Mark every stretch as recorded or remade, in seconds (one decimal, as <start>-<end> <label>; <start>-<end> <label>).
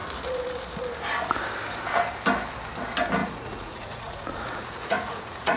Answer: 0.0-3.2 recorded; 3.2-5.6 remade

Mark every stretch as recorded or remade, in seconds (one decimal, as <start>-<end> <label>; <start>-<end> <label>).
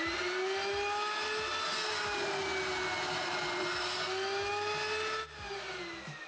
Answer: 0.0-6.3 recorded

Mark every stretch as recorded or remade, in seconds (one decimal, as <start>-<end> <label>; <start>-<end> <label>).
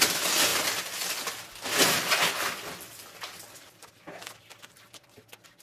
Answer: 0.0-5.6 recorded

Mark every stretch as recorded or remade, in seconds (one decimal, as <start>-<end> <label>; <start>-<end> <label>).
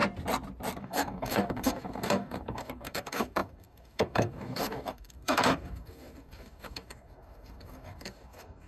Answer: 0.0-0.8 recorded; 0.8-8.7 remade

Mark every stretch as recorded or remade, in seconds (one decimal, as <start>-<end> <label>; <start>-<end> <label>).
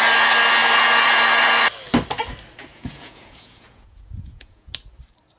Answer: 0.0-2.7 recorded; 2.7-4.7 remade; 4.7-5.4 recorded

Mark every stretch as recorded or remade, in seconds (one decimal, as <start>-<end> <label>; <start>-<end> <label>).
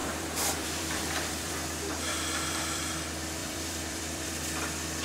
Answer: 0.0-2.9 remade; 2.9-3.4 recorded; 3.4-4.3 remade; 4.3-5.0 recorded